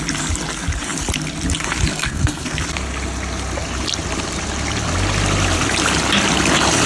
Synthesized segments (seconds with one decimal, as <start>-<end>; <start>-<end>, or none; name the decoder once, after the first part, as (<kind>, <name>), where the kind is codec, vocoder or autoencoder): 1.9-2.6 (codec, SNAC)